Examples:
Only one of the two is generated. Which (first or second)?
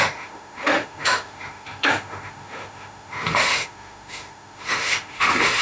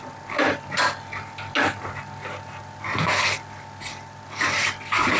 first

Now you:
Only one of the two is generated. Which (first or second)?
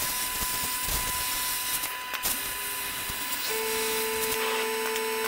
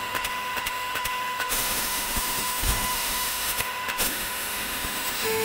second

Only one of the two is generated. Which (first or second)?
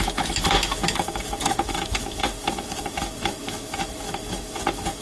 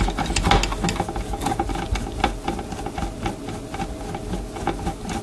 first